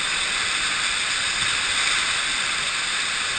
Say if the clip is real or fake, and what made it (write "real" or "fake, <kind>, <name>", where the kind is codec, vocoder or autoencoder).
real